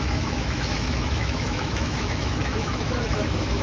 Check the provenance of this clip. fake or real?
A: fake